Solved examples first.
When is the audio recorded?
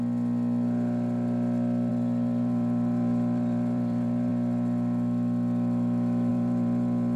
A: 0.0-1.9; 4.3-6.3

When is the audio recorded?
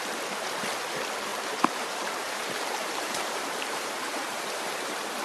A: 0.0-1.3; 4.4-5.2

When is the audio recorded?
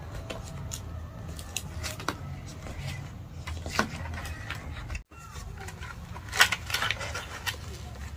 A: 0.0-2.5; 3.3-8.2